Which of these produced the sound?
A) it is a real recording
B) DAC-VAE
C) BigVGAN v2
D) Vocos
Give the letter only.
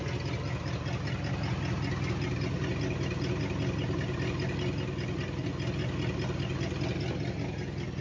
A